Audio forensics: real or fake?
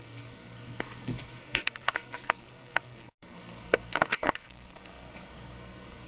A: fake